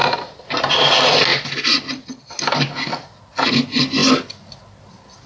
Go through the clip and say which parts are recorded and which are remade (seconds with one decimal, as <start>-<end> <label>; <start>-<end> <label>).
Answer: 0.0-0.7 remade; 0.7-5.3 recorded